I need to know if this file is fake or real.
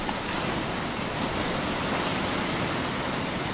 real